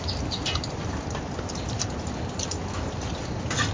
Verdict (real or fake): real